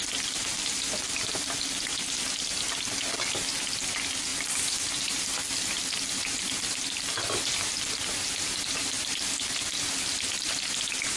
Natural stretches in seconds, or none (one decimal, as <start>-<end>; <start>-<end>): 0.0-11.2